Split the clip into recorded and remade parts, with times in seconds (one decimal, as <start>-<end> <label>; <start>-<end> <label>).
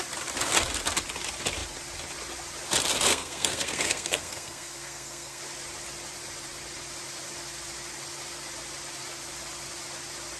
0.0-3.1 recorded; 3.1-5.4 remade; 5.4-10.4 recorded